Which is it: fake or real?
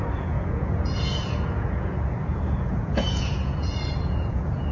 fake